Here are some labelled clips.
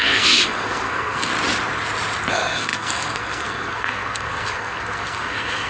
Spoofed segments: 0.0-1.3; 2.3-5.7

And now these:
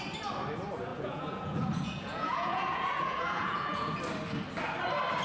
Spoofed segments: 0.9-4.0